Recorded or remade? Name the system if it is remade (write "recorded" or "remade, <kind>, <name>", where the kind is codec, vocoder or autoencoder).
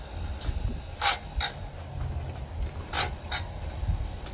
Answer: recorded